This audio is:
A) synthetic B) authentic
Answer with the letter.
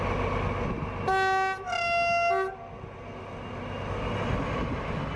B